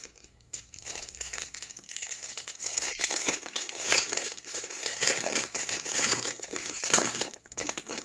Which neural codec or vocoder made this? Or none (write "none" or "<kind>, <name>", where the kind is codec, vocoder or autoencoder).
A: codec, SNAC